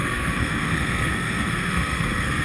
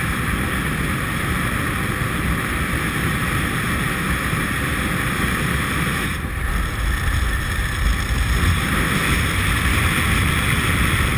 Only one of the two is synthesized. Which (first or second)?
first